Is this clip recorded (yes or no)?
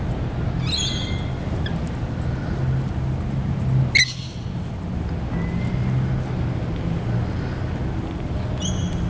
yes